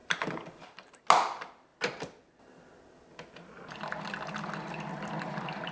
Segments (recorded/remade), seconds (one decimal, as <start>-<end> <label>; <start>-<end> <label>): 0.0-1.0 remade; 1.0-5.7 recorded